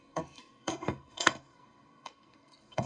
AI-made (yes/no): yes